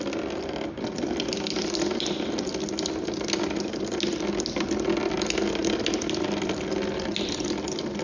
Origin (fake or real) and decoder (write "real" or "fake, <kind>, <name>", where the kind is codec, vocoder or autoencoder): real